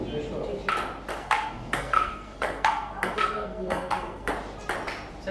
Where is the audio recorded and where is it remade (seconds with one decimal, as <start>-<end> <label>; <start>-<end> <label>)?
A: 0.0-1.1 recorded; 1.1-4.3 remade; 4.3-5.3 recorded